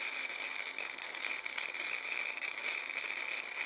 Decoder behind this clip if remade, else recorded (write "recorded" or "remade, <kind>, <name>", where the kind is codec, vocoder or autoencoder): recorded